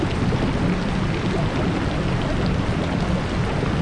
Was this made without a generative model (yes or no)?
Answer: yes